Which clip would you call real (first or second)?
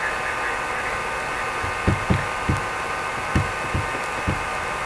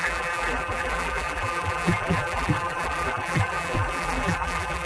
first